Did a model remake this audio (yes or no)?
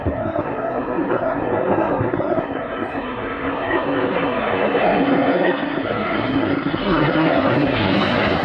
yes